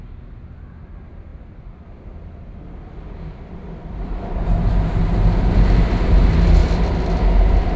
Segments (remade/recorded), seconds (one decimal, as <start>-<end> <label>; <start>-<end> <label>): 0.0-1.3 recorded; 1.3-4.7 remade; 4.7-7.8 recorded